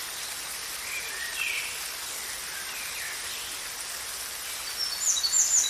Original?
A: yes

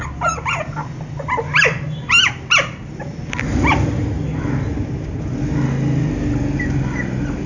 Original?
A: yes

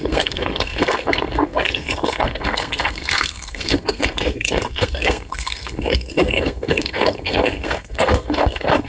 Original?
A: no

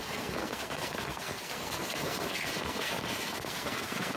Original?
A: no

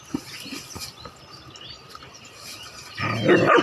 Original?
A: yes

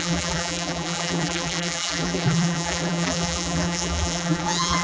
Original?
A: no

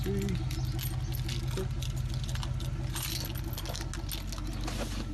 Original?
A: yes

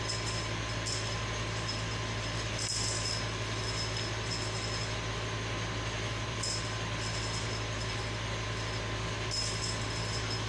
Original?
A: no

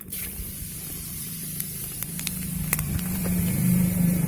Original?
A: no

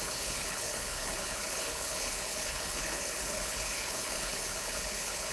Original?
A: no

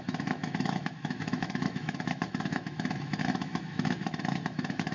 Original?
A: no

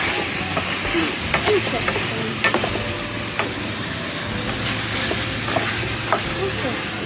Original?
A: yes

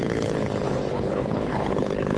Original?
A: no